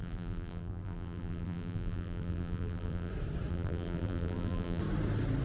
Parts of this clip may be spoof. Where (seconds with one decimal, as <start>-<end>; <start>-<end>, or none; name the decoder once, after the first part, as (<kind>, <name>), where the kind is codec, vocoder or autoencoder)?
0.0-3.1 (vocoder, BigVGAN v2); 3.5-4.8